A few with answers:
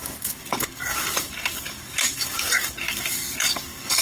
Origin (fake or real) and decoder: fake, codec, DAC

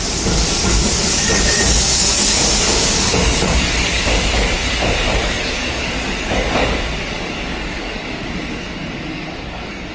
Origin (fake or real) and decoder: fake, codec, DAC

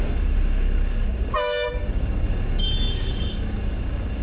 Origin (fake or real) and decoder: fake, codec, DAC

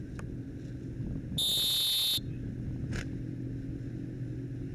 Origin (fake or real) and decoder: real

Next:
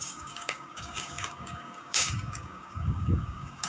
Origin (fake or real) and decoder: fake, codec, DAC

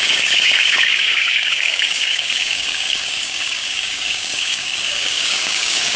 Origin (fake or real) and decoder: fake, codec, DAC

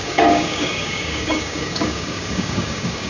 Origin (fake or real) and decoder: fake, codec, DAC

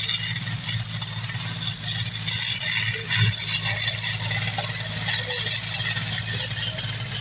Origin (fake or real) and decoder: real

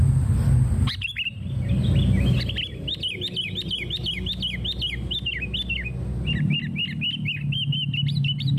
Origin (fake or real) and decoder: real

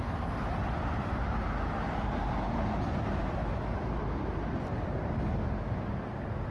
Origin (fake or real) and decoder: real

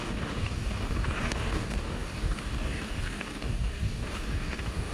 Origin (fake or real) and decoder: fake, codec, DAC